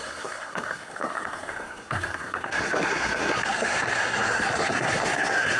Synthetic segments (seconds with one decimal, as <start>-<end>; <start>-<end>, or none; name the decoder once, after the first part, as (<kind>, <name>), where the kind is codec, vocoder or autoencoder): 0.0-5.6 (codec, SNAC)